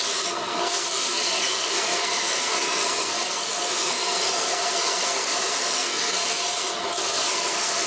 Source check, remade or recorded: remade